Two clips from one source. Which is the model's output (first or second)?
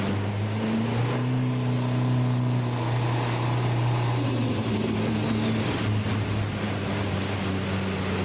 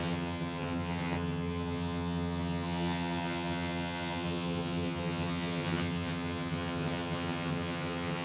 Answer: second